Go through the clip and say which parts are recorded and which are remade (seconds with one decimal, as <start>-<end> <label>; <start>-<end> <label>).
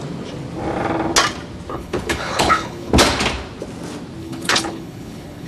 0.0-1.7 recorded; 1.7-2.9 remade; 2.9-4.2 recorded; 4.2-5.5 remade